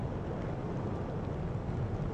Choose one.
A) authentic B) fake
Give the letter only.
B